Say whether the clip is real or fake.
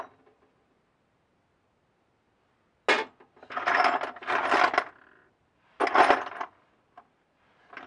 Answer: real